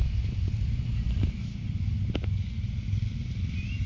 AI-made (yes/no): no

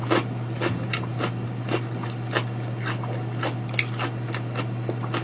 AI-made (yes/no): no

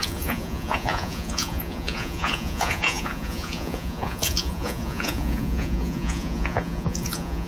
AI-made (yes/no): yes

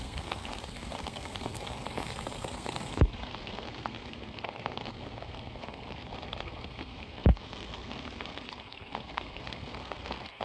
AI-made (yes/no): yes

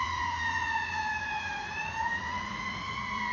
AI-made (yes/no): yes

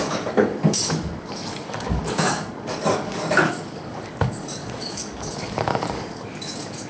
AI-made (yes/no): yes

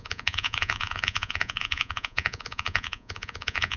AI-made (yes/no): yes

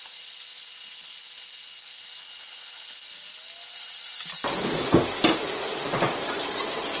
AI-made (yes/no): no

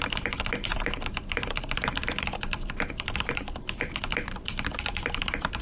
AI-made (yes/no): yes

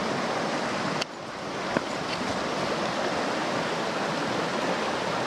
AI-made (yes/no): no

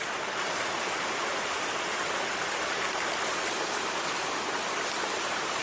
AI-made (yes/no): no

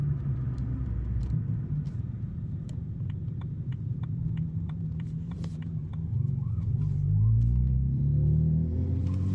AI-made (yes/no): yes